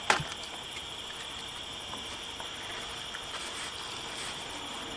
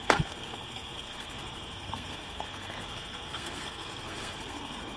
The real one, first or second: first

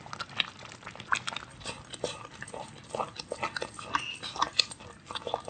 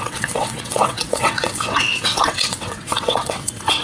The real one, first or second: first